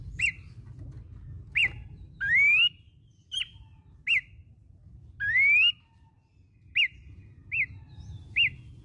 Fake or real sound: real